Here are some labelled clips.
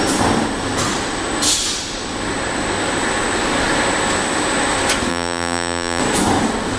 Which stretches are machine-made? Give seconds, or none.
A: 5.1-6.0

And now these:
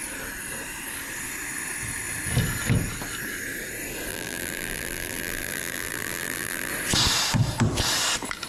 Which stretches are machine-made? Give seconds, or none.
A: 4.1-6.7